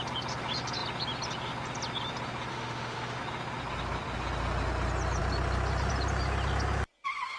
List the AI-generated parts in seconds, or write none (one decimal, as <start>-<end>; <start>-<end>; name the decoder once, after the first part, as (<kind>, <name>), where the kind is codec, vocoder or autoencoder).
2.5-3.2 (autoencoder, DAC-VAE)